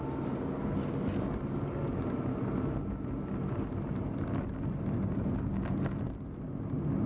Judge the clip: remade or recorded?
recorded